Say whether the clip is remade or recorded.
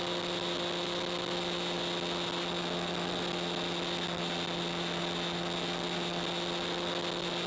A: recorded